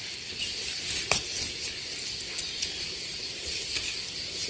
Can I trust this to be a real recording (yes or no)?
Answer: yes